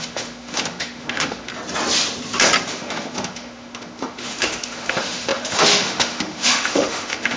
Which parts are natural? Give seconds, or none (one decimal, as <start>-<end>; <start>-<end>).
1.5-2.7